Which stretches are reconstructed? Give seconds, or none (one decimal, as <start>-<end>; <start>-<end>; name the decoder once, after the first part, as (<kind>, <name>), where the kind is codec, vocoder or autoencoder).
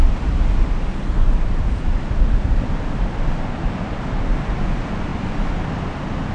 none